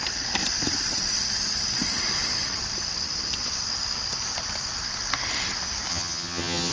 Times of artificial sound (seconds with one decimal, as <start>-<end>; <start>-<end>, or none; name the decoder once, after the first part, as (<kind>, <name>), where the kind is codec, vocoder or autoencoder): 5.9-6.7 (vocoder, HiFi-GAN)